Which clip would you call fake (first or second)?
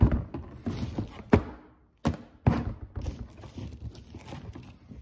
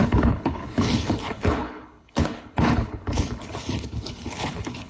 second